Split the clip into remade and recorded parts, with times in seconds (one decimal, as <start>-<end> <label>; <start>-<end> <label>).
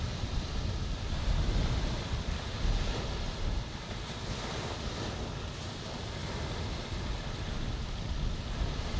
0.0-9.0 recorded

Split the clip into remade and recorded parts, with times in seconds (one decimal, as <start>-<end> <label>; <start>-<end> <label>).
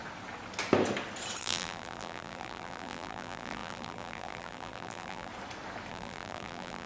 0.0-1.4 recorded; 1.4-5.3 remade; 5.3-5.9 recorded; 5.9-6.9 remade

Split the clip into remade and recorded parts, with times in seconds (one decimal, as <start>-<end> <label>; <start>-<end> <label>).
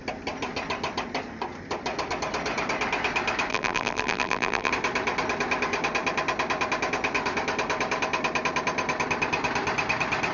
0.0-3.5 recorded; 3.5-4.7 remade; 4.7-10.3 recorded